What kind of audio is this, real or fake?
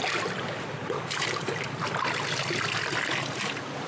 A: real